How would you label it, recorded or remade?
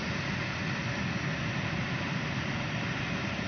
recorded